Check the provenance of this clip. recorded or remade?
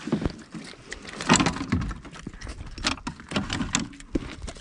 recorded